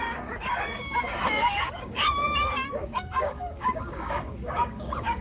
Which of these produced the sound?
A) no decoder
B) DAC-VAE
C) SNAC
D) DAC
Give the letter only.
D